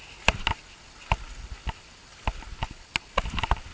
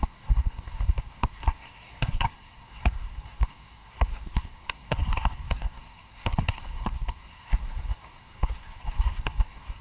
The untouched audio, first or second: first